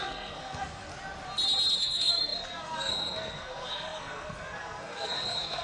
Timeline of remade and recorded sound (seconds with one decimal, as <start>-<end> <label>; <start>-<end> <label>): 0.0-0.9 remade; 0.9-1.8 recorded; 1.8-5.6 remade